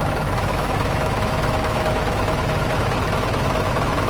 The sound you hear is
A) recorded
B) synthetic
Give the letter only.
B